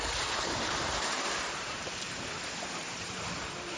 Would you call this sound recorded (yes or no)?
no